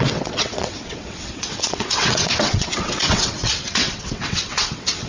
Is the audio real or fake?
fake